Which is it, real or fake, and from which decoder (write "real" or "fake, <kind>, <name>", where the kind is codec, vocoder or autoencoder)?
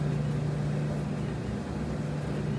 real